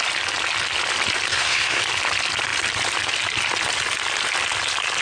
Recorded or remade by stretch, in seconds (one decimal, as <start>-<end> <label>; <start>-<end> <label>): 0.0-1.3 recorded; 1.3-1.8 remade; 1.8-5.0 recorded